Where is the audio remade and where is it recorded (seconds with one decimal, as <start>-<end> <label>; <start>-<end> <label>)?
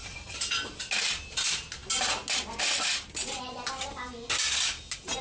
0.0-5.2 recorded